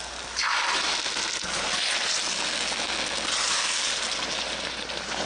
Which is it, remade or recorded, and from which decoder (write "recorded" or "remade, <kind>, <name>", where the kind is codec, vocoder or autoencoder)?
recorded